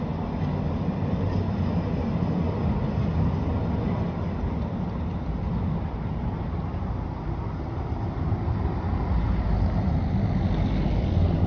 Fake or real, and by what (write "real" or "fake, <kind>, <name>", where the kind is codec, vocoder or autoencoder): real